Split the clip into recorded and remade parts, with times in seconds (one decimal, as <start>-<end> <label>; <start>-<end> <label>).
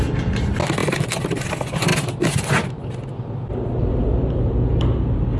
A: 0.0-0.8 recorded; 0.8-1.5 remade; 1.5-5.4 recorded